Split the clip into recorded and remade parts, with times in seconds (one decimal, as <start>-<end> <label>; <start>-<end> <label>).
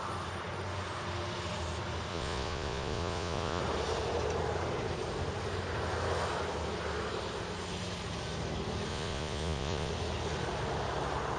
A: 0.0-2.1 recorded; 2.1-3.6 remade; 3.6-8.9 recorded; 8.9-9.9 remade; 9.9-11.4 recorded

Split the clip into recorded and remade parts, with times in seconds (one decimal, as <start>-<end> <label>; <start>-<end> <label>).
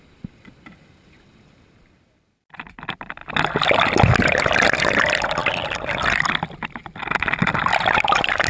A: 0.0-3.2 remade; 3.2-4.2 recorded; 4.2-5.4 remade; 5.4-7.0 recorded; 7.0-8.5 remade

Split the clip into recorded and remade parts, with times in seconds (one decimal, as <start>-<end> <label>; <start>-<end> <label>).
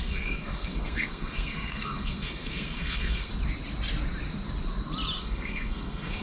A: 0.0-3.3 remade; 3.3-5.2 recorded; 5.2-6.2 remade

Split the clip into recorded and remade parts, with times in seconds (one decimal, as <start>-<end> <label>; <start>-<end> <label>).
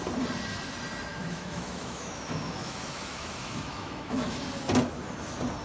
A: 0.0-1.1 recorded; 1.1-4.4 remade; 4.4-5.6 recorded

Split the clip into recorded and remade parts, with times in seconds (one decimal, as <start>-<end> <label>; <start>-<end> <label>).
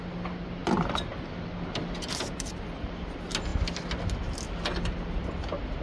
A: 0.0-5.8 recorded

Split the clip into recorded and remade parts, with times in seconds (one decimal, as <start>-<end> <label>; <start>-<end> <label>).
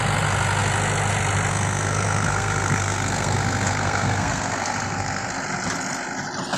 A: 0.0-1.5 recorded; 1.5-5.3 remade; 5.3-6.6 recorded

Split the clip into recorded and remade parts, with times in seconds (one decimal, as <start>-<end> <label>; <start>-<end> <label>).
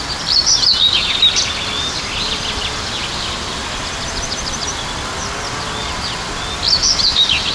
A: 0.0-0.4 remade; 0.4-2.2 recorded; 2.2-3.6 remade; 3.6-5.9 recorded; 5.9-7.5 remade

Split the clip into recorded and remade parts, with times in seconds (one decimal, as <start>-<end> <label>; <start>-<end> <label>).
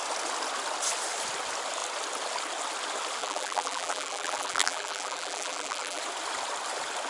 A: 0.0-3.2 recorded; 3.2-6.0 remade; 6.0-7.1 recorded